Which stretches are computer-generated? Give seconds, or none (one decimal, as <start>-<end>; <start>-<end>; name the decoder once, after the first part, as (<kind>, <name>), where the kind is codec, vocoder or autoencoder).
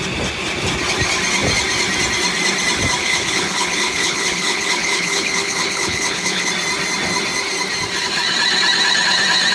3.0-6.5 (codec, HILCodec)